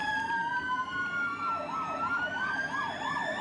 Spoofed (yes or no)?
yes